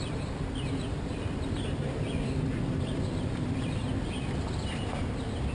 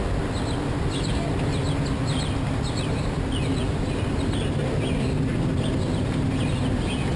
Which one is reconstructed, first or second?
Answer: first